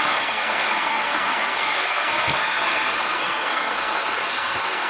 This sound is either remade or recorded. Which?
remade